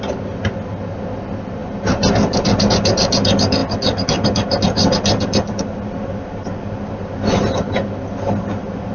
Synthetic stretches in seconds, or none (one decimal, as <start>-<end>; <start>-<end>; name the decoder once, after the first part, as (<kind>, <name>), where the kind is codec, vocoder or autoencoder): none